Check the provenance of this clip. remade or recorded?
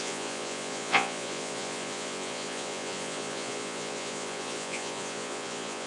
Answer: remade